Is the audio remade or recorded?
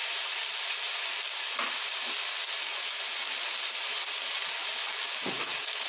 recorded